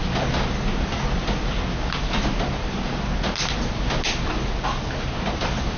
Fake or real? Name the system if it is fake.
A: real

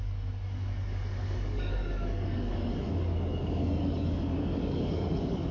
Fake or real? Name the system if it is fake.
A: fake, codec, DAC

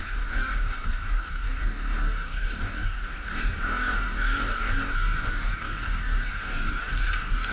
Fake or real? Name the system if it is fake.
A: fake, codec, DAC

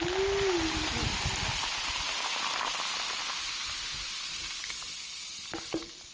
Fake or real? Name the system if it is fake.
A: real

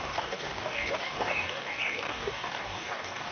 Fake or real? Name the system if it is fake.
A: fake, codec, DAC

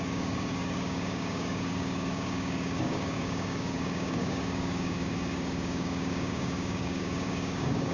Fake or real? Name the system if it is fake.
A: fake, codec, DAC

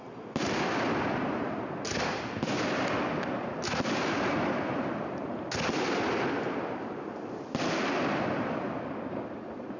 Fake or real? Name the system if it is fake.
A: real